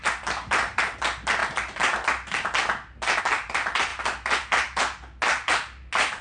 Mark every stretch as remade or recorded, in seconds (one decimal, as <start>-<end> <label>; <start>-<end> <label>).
0.0-6.2 recorded